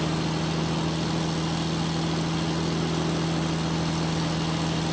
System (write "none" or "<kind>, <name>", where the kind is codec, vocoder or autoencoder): none